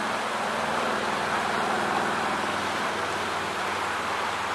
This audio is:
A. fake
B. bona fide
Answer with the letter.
B